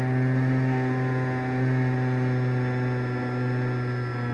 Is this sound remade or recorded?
recorded